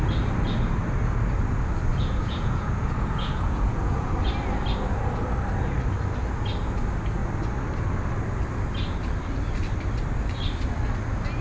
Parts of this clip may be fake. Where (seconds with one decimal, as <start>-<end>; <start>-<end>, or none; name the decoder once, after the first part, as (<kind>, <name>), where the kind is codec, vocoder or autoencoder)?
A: 1.9-4.2 (vocoder, Vocos)